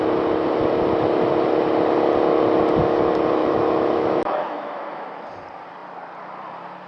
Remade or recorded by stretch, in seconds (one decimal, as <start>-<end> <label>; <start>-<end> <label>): 0.0-3.4 recorded; 3.4-5.1 remade; 5.1-6.9 recorded